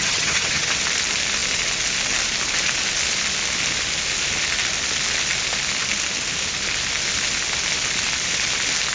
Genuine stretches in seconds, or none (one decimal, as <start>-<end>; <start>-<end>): 0.7-8.9